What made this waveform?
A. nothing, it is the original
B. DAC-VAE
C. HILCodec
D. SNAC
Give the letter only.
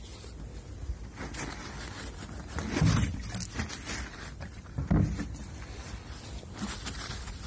A